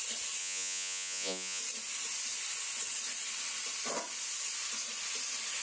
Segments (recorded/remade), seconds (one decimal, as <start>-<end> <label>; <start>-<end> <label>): 0.0-0.4 recorded; 0.4-1.6 remade; 1.6-5.6 recorded